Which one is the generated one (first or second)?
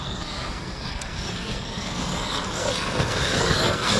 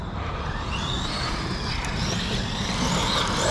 first